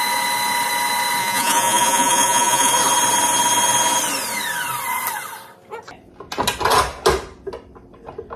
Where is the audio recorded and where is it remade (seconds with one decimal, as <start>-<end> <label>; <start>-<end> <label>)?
0.0-1.2 recorded; 1.2-2.7 remade; 2.7-8.4 recorded

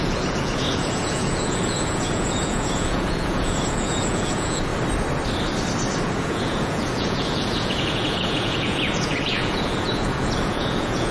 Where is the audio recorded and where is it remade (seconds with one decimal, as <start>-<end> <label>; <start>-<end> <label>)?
0.0-4.7 remade; 4.7-6.0 recorded; 6.0-11.1 remade

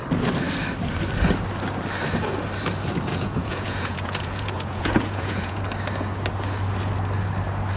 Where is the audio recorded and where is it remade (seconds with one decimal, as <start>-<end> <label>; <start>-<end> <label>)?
0.0-3.1 recorded; 3.1-5.6 remade; 5.6-7.8 recorded

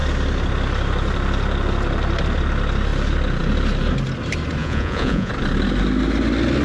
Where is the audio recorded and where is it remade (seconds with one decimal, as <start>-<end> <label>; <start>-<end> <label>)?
0.0-4.6 recorded; 4.6-5.3 remade; 5.3-6.6 recorded

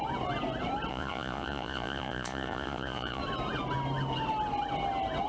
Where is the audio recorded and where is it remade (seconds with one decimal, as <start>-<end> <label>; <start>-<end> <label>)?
0.0-0.9 recorded; 0.9-3.2 remade; 3.2-5.3 recorded

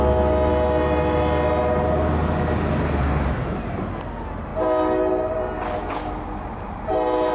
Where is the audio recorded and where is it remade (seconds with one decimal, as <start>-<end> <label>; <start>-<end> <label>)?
0.0-7.3 recorded